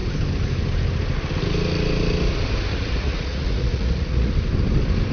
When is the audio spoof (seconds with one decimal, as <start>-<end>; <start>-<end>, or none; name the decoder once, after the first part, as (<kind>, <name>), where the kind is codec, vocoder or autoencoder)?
2.7-4.3 (vocoder, Vocos)